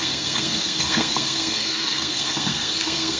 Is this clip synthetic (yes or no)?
yes